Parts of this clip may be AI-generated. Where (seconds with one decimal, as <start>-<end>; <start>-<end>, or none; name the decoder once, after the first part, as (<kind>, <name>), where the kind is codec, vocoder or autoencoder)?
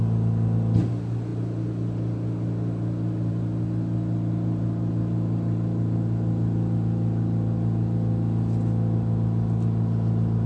none